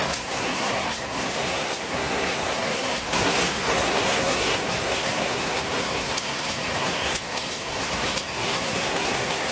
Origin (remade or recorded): remade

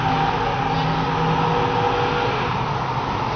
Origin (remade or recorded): recorded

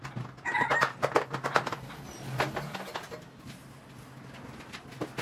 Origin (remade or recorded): recorded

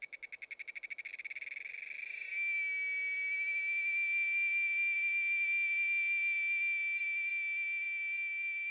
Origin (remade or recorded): recorded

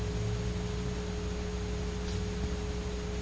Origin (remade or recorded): recorded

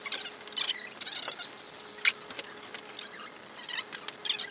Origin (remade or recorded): recorded